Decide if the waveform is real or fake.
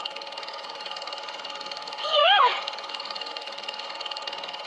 fake